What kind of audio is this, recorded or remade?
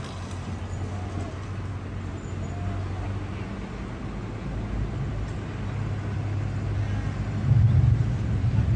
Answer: recorded